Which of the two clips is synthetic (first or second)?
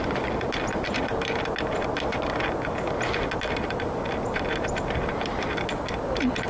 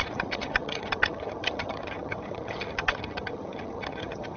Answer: second